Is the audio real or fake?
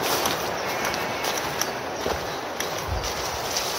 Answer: real